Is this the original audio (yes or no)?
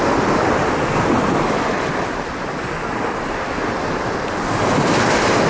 no